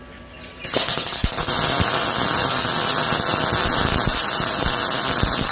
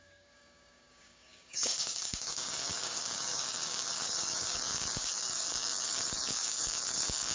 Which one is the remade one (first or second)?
second